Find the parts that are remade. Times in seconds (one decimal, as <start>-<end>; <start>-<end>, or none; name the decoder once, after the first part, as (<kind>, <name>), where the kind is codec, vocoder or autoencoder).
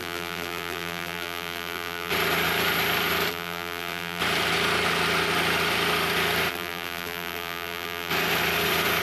0.0-2.1 (vocoder, BigVGAN v2); 3.3-4.2; 6.5-8.1